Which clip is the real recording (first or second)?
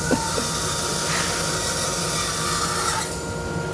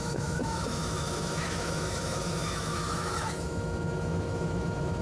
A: first